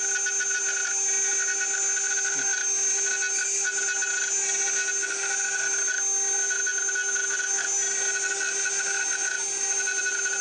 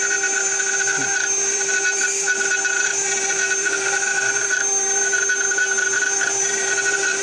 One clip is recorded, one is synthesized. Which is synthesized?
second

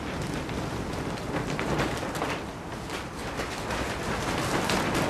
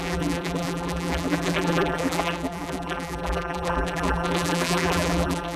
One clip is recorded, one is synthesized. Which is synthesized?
second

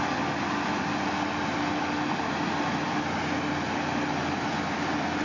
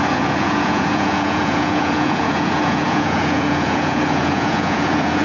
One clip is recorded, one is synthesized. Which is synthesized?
second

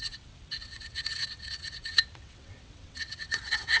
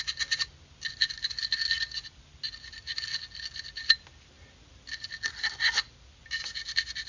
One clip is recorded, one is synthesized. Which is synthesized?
first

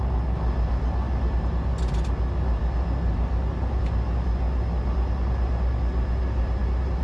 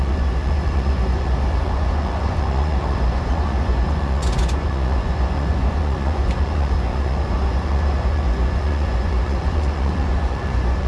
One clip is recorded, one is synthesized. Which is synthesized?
second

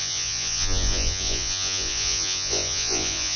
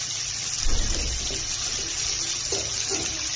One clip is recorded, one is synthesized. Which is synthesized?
first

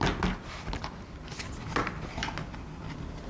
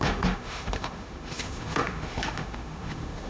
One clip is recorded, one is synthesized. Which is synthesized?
second